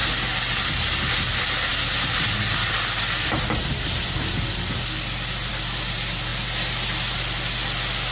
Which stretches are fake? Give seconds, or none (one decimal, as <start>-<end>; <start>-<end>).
none